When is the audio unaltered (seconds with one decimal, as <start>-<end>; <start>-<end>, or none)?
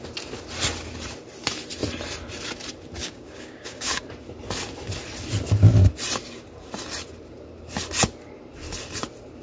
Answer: 0.0-3.0; 4.0-9.4